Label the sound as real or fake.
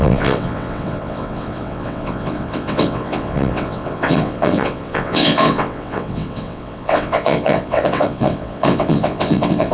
fake